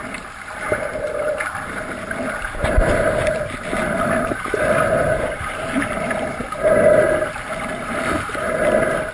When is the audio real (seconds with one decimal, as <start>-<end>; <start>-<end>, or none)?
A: 0.0-9.1